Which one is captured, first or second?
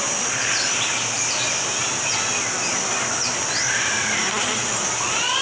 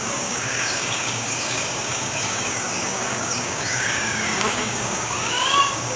first